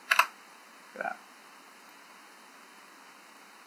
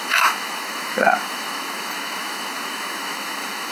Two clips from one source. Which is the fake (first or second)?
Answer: second